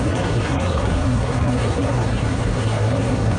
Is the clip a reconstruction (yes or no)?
yes